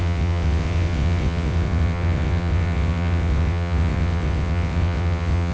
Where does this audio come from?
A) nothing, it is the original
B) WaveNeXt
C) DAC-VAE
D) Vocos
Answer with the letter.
B